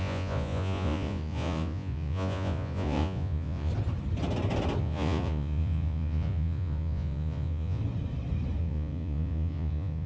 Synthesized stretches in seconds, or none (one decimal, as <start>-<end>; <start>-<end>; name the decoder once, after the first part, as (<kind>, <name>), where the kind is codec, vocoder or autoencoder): 0.0-3.7 (vocoder, Vocos); 4.8-7.8; 8.6-10.1

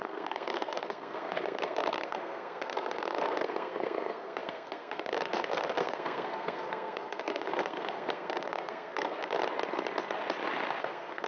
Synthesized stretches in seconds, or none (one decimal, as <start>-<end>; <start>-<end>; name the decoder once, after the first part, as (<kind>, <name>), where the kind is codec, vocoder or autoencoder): 0.0-9.4 (codec, SNAC); 10.8-11.3